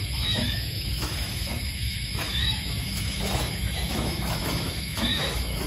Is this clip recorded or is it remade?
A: remade